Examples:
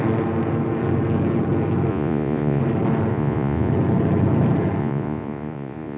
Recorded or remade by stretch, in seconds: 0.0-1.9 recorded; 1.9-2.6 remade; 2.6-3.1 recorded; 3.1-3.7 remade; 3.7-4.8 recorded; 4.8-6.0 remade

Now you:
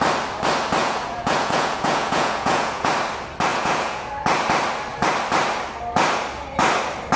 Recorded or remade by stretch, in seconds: 0.0-0.8 recorded; 0.8-2.9 remade; 2.9-3.5 recorded; 3.5-4.1 remade; 4.1-7.2 recorded

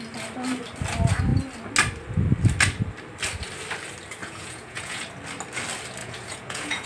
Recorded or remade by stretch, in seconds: 0.0-4.2 recorded; 4.2-5.1 remade; 5.1-6.0 recorded; 6.0-6.9 remade